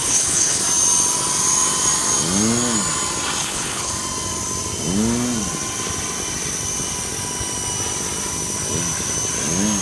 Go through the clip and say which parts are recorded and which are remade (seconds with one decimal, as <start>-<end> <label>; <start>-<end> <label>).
0.0-0.6 remade; 0.6-3.4 recorded; 3.4-3.9 remade; 3.9-9.8 recorded